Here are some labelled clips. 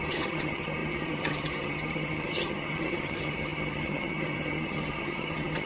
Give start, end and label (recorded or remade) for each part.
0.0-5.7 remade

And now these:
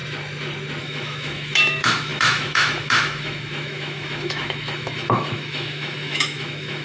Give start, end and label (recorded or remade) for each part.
0.0-0.8 recorded; 0.8-6.8 remade

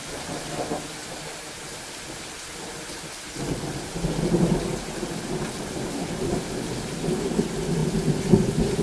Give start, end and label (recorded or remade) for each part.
0.0-8.8 recorded

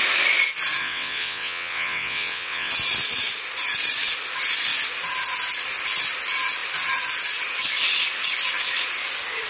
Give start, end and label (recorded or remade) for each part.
0.0-0.8 recorded; 0.8-2.7 remade; 2.7-9.5 recorded